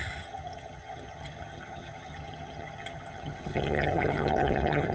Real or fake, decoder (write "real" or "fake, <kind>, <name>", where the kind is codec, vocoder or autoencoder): fake, vocoder, HiFi-GAN